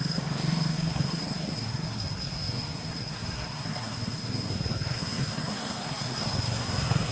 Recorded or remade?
remade